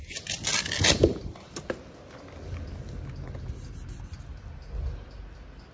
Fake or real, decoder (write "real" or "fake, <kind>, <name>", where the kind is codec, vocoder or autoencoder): real